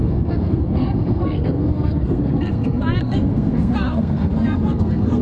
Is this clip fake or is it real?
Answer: fake